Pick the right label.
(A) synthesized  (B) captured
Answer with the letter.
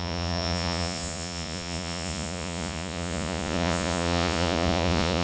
A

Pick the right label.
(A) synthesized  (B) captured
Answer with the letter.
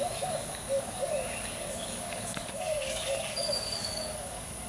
A